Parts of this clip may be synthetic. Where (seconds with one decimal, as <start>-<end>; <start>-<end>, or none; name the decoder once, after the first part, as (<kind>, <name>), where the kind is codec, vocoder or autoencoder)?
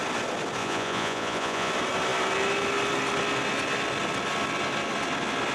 0.6-1.7 (vocoder, Vocos)